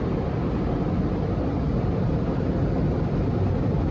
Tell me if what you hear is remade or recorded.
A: recorded